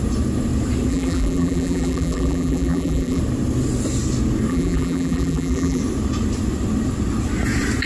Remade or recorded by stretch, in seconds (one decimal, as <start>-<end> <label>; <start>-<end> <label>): 0.0-0.9 recorded; 0.9-3.2 remade; 3.2-4.5 recorded; 4.5-5.8 remade; 5.8-7.9 recorded